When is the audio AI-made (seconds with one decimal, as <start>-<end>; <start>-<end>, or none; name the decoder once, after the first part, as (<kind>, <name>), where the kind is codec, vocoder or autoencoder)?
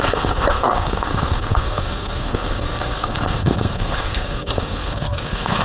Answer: 0.0-5.6 (codec, SNAC)